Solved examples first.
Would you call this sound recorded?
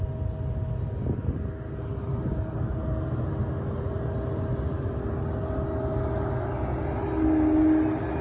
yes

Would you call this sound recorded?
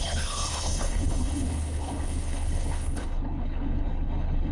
no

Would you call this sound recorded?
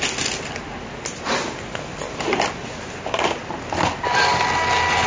yes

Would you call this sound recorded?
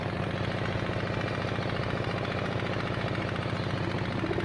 yes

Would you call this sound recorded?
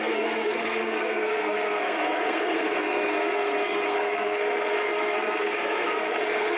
no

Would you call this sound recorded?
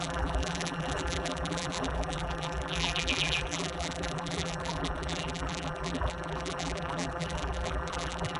no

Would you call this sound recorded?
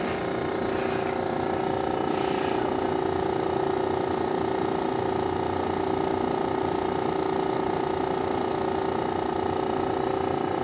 yes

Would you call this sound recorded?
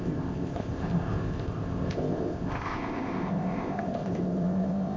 no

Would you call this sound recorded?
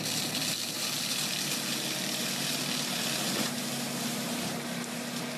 yes